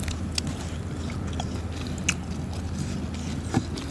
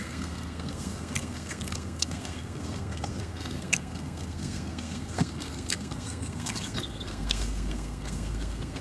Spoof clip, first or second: second